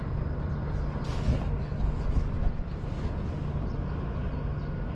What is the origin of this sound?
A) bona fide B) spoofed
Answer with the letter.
A